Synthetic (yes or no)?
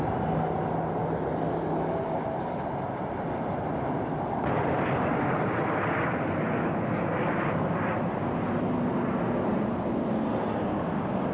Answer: no